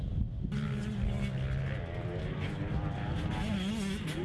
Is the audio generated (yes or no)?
no